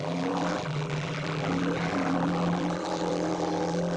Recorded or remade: remade